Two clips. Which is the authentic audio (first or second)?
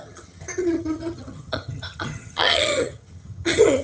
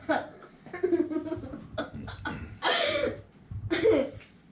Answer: second